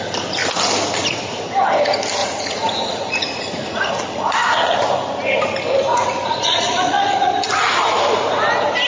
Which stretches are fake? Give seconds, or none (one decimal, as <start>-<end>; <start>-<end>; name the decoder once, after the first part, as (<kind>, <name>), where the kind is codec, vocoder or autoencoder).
2.2-4.8 (vocoder, Vocos); 5.9-7.3